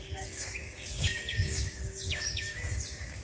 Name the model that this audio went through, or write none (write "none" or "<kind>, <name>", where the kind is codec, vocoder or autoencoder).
codec, DAC